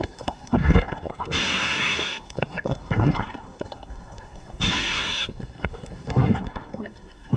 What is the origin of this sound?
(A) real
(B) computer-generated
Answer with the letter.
B